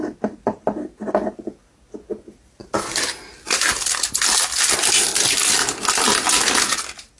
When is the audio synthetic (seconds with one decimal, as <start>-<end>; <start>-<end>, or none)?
none